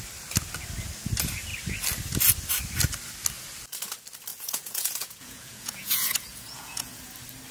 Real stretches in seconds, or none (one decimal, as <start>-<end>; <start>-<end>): 0.0-4.3; 7.0-7.5